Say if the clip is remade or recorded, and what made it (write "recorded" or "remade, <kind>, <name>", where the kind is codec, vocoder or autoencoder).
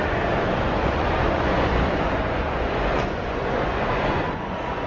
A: remade, vocoder, Vocos